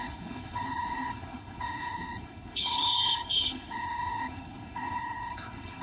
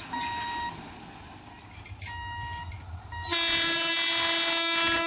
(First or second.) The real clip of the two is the second